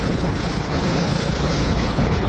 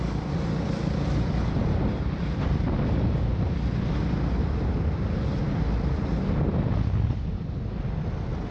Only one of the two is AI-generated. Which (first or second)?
first